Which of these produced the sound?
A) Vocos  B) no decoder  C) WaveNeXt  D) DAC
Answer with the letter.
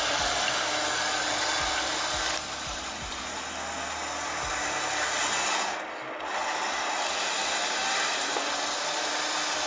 B